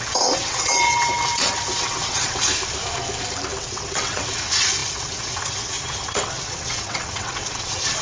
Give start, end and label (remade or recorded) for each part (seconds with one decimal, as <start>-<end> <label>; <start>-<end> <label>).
0.0-2.5 remade; 2.5-3.6 recorded; 3.6-8.0 remade